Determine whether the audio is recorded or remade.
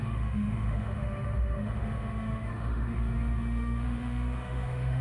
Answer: remade